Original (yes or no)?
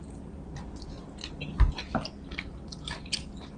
yes